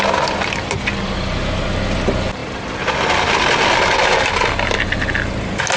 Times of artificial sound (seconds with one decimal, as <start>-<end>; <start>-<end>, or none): none